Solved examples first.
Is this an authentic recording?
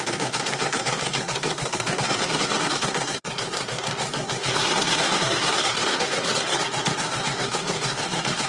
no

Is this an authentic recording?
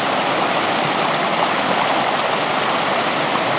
yes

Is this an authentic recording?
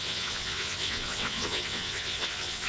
no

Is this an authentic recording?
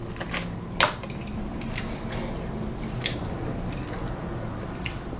yes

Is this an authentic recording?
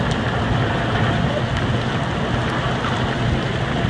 yes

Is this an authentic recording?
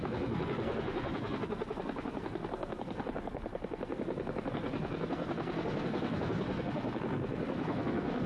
no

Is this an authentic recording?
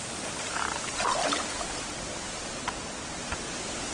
yes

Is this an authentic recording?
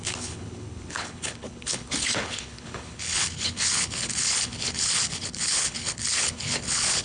no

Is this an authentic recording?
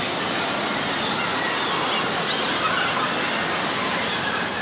yes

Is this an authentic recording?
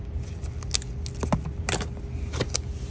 yes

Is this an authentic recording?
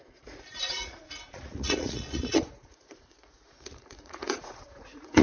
no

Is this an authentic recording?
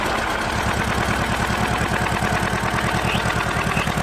yes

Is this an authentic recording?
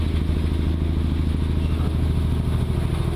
yes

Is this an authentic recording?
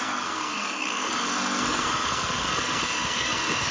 no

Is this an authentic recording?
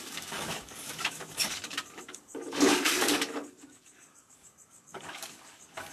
no